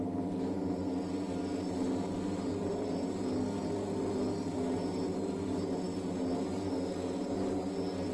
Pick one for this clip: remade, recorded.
recorded